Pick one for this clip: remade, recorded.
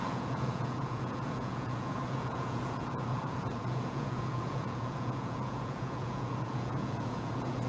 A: remade